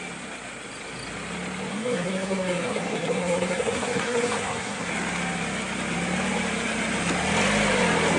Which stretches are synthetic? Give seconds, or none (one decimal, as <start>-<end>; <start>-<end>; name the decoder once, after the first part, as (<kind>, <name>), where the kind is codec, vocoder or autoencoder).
1.7-4.9 (codec, SNAC)